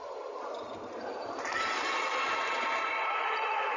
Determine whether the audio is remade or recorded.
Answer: remade